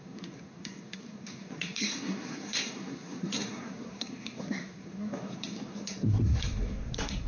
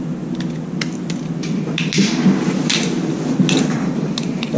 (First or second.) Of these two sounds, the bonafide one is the second